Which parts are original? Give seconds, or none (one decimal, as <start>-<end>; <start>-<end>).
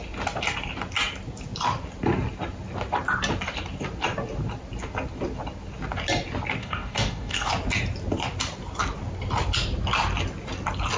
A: 0.0-6.6; 7.5-11.0